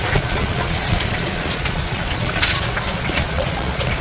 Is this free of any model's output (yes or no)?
no